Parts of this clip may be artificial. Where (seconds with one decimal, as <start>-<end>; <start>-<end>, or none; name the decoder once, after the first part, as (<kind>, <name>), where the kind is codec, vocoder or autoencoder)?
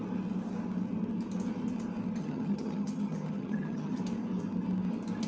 2.2-4.0 (vocoder, HiFi-GAN)